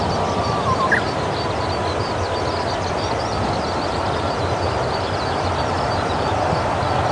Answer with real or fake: fake